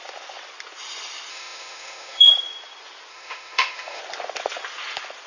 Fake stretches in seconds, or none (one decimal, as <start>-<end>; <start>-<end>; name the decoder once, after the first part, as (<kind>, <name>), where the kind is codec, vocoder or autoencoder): 1.3-2.3 (autoencoder, DAC-VAE); 3.1-4.0